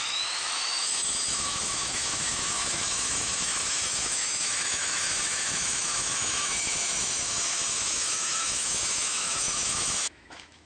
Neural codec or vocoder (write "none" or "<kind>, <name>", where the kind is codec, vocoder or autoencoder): autoencoder, DAC-VAE